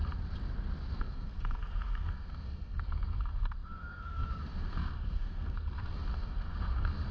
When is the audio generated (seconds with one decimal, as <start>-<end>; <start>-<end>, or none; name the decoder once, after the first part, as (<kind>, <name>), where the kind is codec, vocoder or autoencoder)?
1.0-7.1 (codec, SNAC)